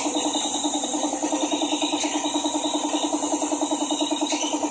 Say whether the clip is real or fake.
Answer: real